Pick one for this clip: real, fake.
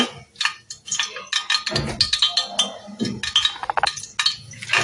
real